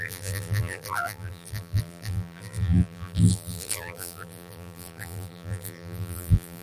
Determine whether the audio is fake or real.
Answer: fake